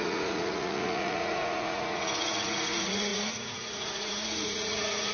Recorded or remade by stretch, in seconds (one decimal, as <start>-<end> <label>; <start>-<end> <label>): 0.0-5.1 remade